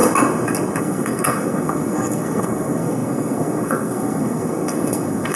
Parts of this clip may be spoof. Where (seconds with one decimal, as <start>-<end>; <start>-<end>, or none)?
0.8-5.4